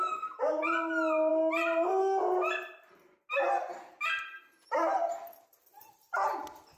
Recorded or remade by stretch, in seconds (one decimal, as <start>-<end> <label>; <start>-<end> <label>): 0.0-6.8 recorded